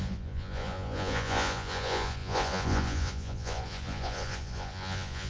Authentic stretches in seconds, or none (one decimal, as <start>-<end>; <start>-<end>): none